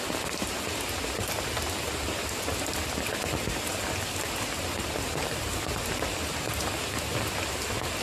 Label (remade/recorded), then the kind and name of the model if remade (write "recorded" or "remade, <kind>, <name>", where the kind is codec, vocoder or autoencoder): recorded